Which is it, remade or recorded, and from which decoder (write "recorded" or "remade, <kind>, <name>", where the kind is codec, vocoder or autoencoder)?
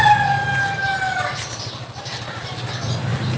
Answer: recorded